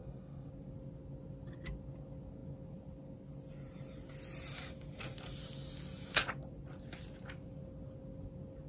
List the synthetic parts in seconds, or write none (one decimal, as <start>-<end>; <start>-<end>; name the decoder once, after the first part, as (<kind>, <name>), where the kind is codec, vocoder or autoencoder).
0.0-0.5 (codec, SNAC)